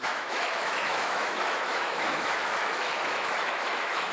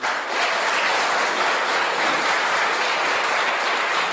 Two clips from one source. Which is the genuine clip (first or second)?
second